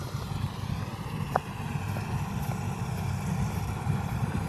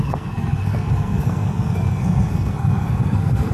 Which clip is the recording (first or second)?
first